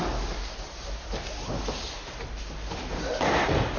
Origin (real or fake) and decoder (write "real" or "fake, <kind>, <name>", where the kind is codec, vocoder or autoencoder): real